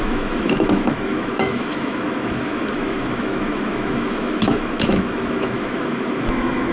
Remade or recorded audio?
remade